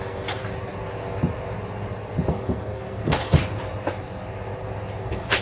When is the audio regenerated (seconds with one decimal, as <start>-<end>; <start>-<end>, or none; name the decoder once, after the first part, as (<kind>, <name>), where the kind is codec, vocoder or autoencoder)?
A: 0.0-0.4 (codec, SNAC); 2.3-3.4; 5.0-5.4